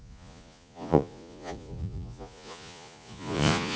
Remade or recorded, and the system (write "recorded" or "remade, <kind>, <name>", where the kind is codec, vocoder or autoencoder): remade, vocoder, Vocos